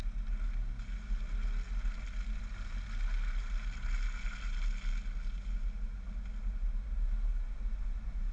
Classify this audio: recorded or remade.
recorded